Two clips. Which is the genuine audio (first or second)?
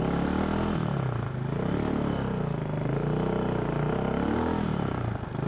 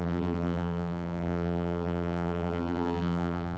first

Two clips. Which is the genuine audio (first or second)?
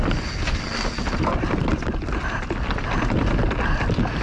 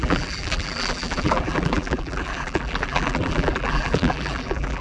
first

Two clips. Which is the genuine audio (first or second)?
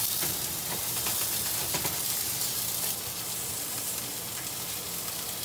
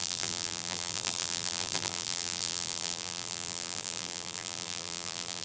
first